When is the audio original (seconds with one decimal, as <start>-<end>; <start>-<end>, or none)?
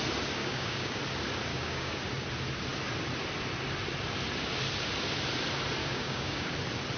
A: 0.0-0.4; 1.0-1.5; 2.0-5.8; 6.5-7.0